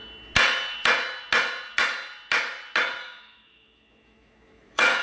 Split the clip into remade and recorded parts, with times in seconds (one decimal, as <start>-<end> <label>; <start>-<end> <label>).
0.0-3.0 recorded; 3.0-5.0 remade